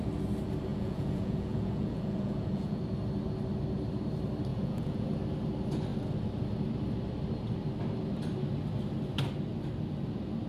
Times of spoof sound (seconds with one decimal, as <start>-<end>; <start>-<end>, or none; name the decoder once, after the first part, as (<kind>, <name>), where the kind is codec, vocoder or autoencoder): 0.7-2.8 (vocoder, Vocos); 4.5-5.1